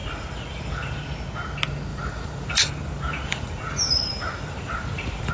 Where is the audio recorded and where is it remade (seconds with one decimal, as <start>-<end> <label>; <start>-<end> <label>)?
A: 0.0-1.0 remade; 1.0-1.9 recorded; 1.9-5.3 remade